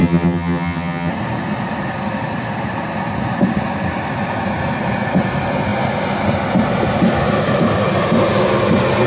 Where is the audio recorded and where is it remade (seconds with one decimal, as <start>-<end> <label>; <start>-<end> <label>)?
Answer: 0.0-1.1 remade; 1.1-9.1 recorded